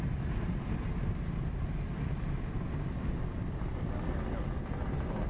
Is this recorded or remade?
recorded